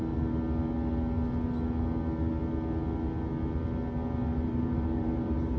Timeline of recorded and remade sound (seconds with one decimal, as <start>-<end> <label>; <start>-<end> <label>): 0.0-4.3 recorded; 4.3-5.6 remade